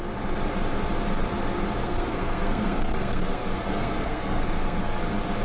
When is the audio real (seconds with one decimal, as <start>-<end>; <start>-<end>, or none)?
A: 0.0-1.8; 5.0-5.4